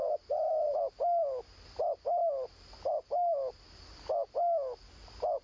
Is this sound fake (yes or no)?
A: no